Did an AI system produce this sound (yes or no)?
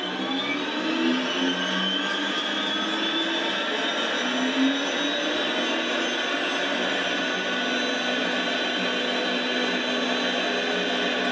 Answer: no